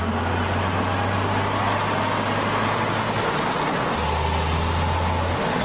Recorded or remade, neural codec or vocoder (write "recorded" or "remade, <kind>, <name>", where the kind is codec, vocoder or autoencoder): recorded